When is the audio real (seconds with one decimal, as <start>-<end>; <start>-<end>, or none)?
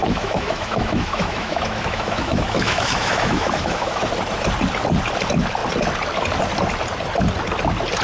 4.1-8.0